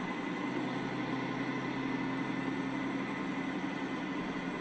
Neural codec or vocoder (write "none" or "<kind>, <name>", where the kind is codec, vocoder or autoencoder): none